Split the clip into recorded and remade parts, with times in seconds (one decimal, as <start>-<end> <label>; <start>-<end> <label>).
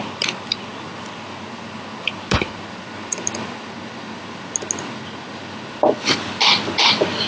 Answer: 0.0-7.3 recorded